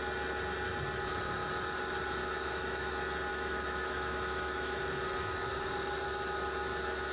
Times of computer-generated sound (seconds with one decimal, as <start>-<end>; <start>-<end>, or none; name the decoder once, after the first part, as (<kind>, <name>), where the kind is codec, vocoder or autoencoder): 2.2-2.9 (autoencoder, DAC-VAE); 3.3-4.8